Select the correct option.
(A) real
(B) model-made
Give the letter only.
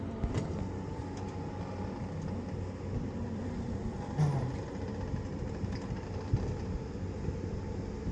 A